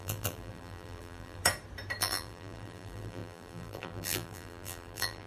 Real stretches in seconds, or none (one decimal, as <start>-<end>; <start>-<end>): 1.4-2.0